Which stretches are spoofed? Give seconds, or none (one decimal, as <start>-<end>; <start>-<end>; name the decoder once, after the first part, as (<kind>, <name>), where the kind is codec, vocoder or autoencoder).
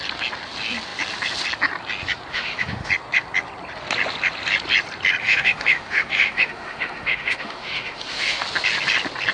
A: 2.3-2.9 (autoencoder, DAC-VAE); 5.2-8.4